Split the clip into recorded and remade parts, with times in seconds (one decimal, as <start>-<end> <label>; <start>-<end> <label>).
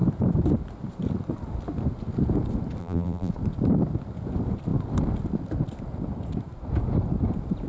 0.0-2.8 recorded; 2.8-3.3 remade; 3.3-7.7 recorded